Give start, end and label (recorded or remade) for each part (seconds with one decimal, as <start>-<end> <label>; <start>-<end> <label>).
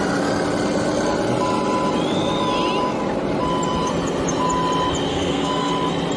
0.0-5.1 recorded; 5.1-5.7 remade; 5.7-6.2 recorded